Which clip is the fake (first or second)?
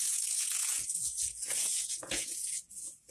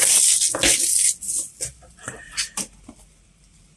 first